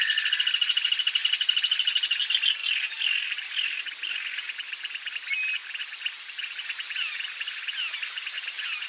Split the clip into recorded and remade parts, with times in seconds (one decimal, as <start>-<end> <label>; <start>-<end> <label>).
0.0-1.2 recorded; 1.2-2.0 remade; 2.0-2.6 recorded; 2.6-3.8 remade; 3.8-8.9 recorded